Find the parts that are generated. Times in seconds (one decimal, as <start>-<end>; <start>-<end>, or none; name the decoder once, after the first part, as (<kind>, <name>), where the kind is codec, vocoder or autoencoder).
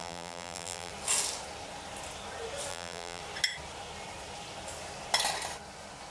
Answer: 0.0-0.9 (vocoder, BigVGAN v2); 2.7-3.2